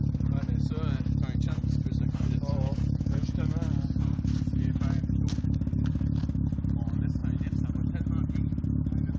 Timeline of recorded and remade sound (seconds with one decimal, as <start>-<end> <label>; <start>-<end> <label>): 0.0-2.5 recorded; 2.5-3.4 remade; 3.4-9.2 recorded